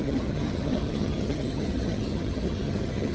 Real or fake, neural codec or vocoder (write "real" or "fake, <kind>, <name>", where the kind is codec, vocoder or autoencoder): fake, vocoder, HiFi-GAN